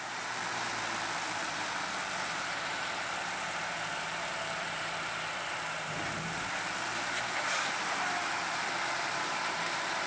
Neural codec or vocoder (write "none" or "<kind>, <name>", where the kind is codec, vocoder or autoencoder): vocoder, BigVGAN v2